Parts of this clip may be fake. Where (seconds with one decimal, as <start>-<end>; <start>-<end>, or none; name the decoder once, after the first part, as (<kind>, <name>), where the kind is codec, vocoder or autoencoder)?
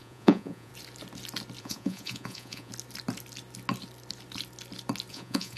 0.0-0.7 (vocoder, Vocos); 1.6-2.7; 5.1-5.6